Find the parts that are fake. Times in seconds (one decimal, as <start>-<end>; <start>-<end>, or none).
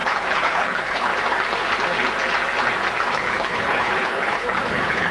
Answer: 0.0-1.1; 3.1-5.1